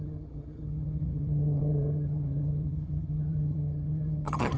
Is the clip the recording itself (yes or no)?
no